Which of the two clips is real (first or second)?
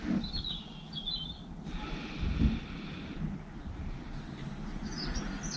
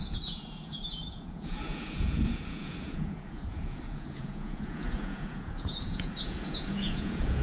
first